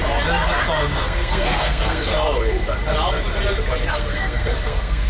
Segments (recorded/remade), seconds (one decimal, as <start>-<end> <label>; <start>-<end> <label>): 0.0-0.8 recorded; 0.8-2.1 remade; 2.1-3.9 recorded; 3.9-5.1 remade